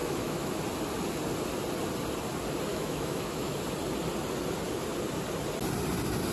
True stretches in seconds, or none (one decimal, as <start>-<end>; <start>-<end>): 0.6-2.7; 3.6-6.3